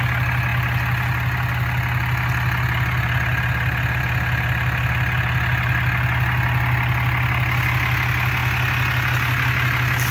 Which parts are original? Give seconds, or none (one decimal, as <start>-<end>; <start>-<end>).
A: 0.0-10.1